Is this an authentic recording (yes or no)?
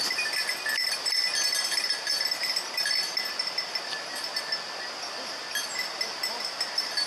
yes